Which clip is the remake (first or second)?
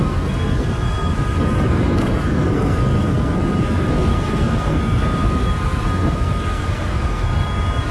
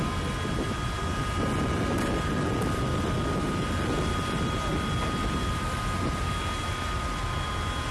first